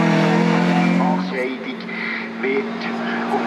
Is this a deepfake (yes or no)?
no